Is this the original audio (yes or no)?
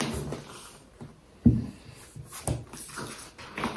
yes